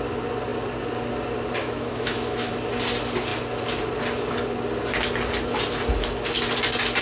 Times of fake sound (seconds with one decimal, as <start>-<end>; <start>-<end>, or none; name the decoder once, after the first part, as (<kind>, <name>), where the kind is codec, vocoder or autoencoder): 1.6-2.5 (autoencoder, DAC-VAE)